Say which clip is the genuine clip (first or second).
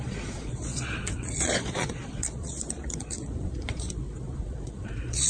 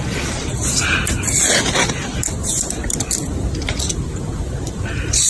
second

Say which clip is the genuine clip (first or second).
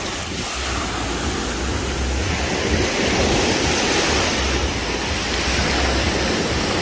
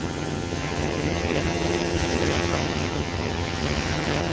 first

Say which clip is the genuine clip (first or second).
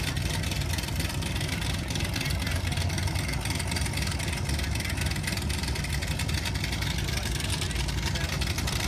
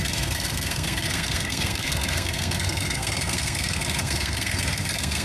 first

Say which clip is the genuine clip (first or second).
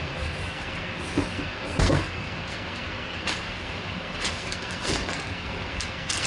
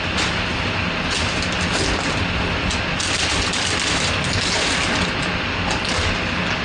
second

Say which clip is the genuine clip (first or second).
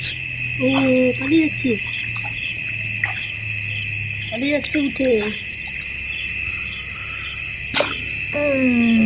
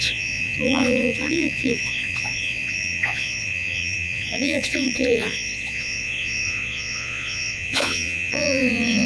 first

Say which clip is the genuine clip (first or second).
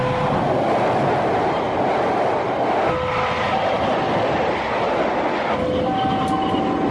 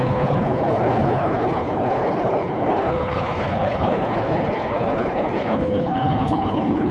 first